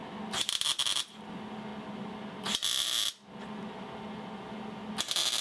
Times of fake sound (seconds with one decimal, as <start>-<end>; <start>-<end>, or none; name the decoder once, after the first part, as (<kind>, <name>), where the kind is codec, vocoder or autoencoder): none